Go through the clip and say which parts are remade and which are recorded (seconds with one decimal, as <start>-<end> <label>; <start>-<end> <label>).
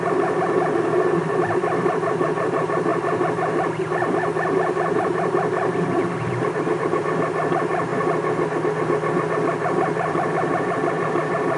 0.0-7.9 remade; 7.9-9.3 recorded; 9.3-11.6 remade